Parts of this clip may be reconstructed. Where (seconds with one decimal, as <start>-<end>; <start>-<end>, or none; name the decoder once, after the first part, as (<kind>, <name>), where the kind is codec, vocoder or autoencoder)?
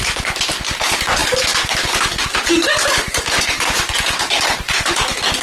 0.0-5.4 (codec, DAC)